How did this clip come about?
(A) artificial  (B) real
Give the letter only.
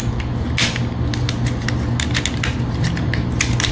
B